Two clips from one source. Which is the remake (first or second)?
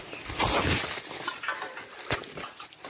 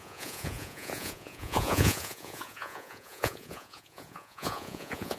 second